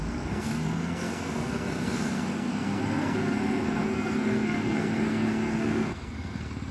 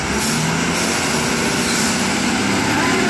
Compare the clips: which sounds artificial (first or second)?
first